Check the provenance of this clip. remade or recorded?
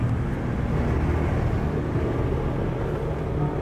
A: recorded